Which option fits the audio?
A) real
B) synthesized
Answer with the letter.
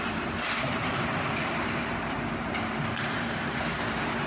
B